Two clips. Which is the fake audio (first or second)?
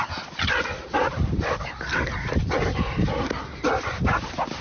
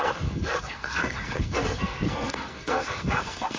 second